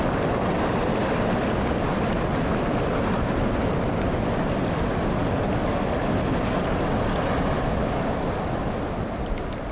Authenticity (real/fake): real